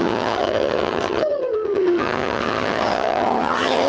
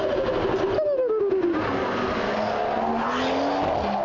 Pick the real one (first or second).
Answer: second